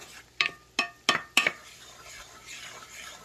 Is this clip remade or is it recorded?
recorded